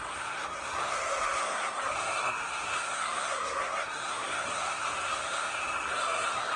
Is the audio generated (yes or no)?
yes